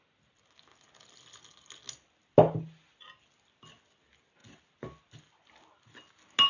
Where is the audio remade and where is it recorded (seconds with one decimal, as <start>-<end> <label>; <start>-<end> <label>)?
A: 0.0-6.5 recorded